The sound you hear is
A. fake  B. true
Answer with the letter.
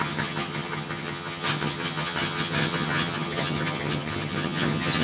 A